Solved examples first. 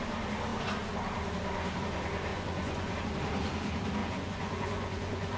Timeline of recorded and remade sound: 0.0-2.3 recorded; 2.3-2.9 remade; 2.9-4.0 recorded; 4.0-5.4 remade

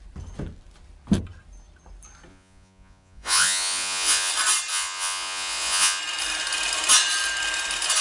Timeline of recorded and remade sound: 0.0-2.3 recorded; 2.3-4.3 remade; 4.3-4.7 recorded; 4.7-6.0 remade; 6.0-8.0 recorded

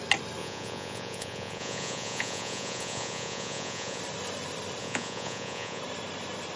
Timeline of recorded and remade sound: 0.0-0.4 recorded; 0.4-4.0 remade; 4.0-4.8 recorded; 4.8-5.8 remade; 5.8-6.6 recorded

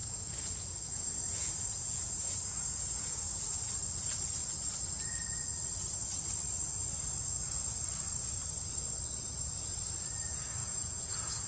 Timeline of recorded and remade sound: 0.0-3.7 remade; 3.7-10.6 recorded; 10.6-11.5 remade